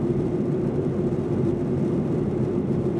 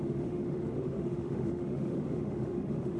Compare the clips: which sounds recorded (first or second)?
first